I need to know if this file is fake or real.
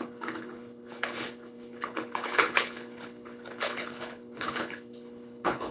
fake